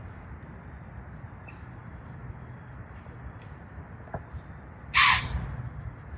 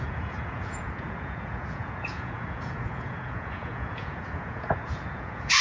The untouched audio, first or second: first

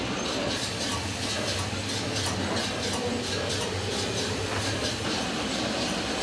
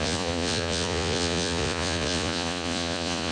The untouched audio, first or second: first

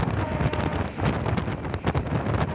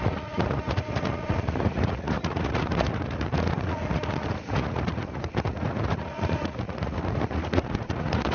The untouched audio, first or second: first